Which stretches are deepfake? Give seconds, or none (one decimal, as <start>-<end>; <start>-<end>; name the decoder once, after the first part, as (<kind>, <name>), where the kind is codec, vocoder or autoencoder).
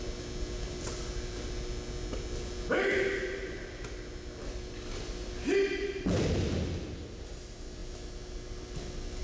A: none